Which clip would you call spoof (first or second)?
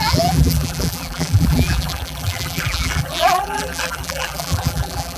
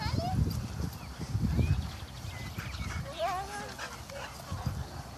first